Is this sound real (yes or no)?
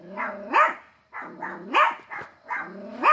yes